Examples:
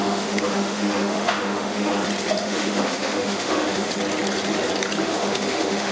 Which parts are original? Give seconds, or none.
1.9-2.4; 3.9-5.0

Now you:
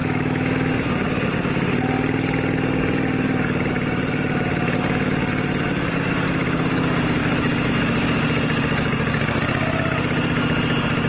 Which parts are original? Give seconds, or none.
0.7-11.1

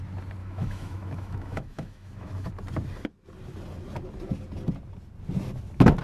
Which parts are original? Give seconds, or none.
0.0-0.4; 2.5-6.0

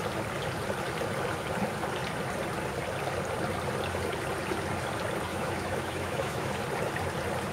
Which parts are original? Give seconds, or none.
0.0-5.3; 6.5-7.5

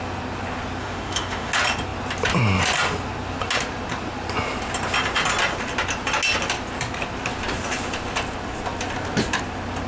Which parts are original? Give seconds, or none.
0.0-0.8; 1.5-9.9

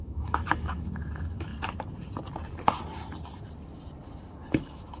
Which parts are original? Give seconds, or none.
1.5-4.5

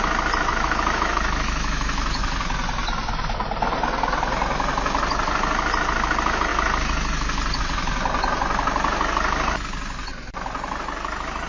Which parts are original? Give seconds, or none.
0.0-0.5; 2.3-11.5